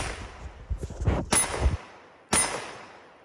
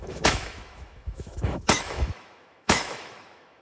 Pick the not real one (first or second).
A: second